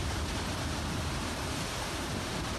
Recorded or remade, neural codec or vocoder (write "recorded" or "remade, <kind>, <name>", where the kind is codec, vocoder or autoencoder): recorded